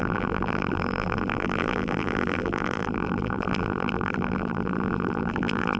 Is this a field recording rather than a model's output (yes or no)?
no